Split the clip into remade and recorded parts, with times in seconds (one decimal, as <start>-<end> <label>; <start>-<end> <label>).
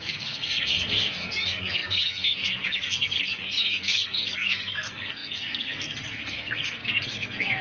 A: 0.0-7.6 remade